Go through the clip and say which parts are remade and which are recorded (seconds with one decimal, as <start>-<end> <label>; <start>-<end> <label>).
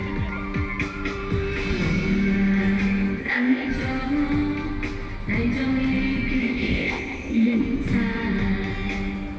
0.0-3.2 recorded; 3.2-3.7 remade; 3.7-6.4 recorded; 6.4-7.6 remade; 7.6-9.4 recorded